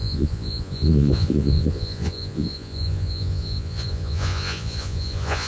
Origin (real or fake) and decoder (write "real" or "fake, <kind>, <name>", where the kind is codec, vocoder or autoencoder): fake, vocoder, Vocos